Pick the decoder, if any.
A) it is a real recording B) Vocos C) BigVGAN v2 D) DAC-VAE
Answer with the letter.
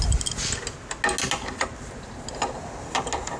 A